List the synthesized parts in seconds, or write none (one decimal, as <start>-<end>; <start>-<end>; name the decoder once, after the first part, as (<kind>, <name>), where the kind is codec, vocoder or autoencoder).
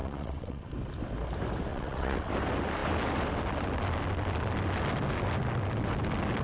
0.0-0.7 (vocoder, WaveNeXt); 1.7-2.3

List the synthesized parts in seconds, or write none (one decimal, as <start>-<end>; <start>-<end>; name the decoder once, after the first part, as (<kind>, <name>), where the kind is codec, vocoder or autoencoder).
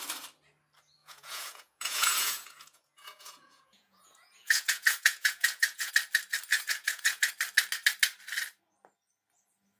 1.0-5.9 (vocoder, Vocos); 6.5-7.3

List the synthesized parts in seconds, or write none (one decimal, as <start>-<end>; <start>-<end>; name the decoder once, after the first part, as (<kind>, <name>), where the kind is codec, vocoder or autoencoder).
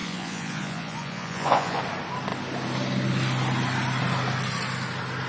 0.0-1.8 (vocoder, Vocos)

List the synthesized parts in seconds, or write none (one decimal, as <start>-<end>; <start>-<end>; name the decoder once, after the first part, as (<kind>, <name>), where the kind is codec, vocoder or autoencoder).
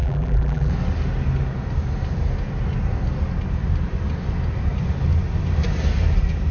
0.0-0.7 (vocoder, BigVGAN v2)